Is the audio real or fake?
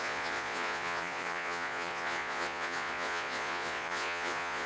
fake